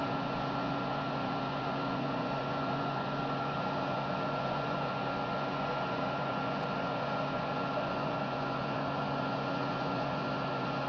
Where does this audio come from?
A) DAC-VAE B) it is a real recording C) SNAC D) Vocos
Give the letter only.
D